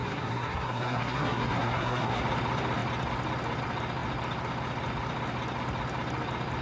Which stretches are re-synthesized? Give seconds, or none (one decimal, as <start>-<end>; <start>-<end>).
0.0-2.2